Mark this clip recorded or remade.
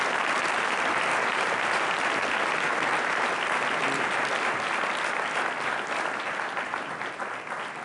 recorded